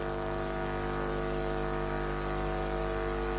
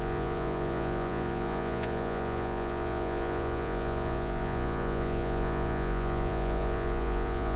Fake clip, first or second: second